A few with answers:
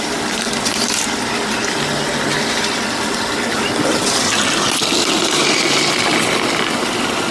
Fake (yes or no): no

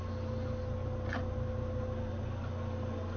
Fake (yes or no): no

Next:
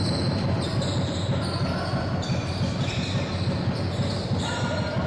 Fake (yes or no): no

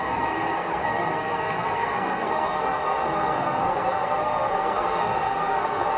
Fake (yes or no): yes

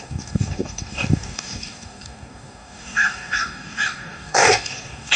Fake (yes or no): yes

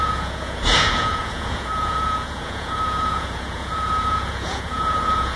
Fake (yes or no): yes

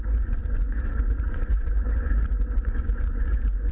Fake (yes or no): yes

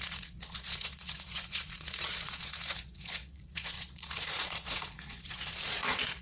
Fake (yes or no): yes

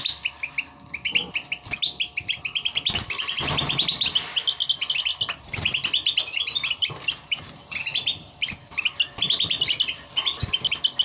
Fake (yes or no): no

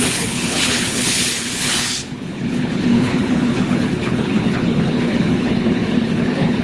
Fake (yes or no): yes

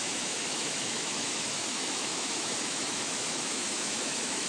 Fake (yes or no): yes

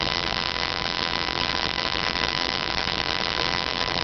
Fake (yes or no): yes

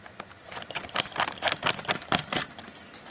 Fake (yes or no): no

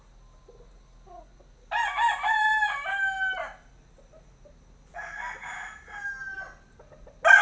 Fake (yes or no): no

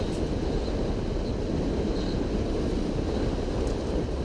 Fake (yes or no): no